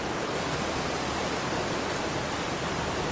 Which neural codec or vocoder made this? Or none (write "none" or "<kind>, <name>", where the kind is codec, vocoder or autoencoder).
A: vocoder, BigVGAN v2